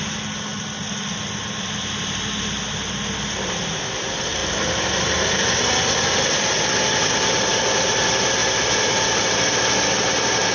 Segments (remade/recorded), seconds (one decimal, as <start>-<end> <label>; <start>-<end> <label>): 0.0-10.5 recorded